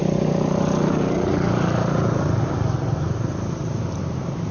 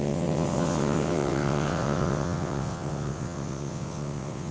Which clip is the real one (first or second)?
first